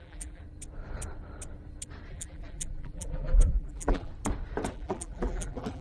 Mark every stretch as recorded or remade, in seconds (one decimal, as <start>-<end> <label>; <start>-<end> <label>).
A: 0.0-0.4 remade; 0.4-2.1 recorded; 2.1-4.1 remade; 4.1-4.7 recorded; 4.7-5.8 remade